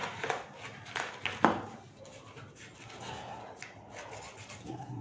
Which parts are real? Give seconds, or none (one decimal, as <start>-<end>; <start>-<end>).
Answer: 0.0-3.0; 3.4-4.6